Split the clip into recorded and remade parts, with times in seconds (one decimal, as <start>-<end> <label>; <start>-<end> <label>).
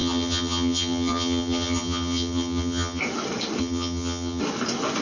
0.0-3.0 remade; 3.0-3.6 recorded; 3.6-4.4 remade; 4.4-5.0 recorded